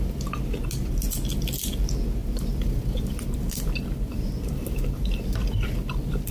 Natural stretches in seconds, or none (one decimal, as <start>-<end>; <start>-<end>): 0.0-2.2